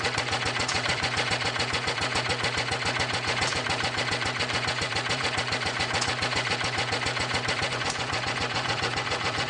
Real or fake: fake